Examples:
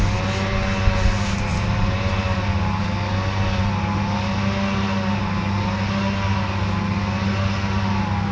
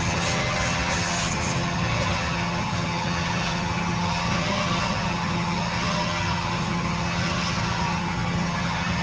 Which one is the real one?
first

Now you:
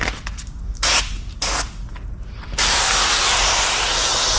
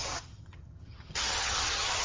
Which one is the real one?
first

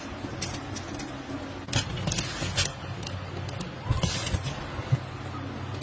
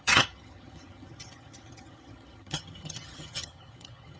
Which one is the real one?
first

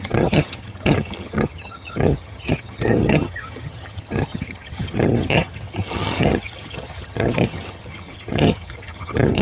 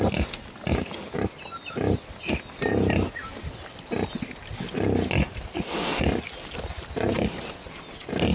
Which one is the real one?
second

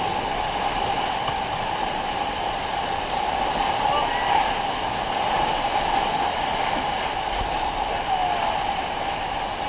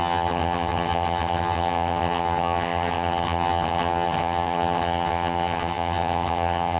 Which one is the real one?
first